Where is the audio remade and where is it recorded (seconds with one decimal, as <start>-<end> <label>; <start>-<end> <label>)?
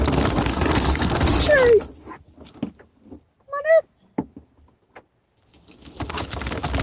0.0-0.5 recorded; 0.5-1.4 remade; 1.4-6.8 recorded